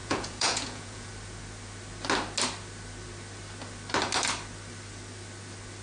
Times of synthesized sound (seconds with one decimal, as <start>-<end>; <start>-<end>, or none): 0.0-1.1